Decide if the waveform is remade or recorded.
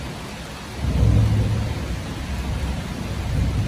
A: recorded